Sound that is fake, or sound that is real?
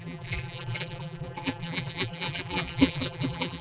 fake